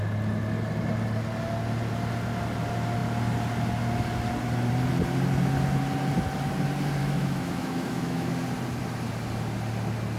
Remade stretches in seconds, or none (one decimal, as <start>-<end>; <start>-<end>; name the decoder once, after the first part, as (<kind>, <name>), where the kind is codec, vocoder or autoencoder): 7.0-8.3 (autoencoder, DAC-VAE)